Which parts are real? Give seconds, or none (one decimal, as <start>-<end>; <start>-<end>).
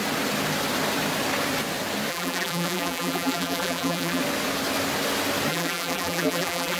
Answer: 0.0-2.1; 4.2-5.5